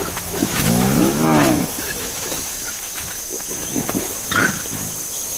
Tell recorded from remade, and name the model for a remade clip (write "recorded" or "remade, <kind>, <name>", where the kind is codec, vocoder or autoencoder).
remade, autoencoder, DAC-VAE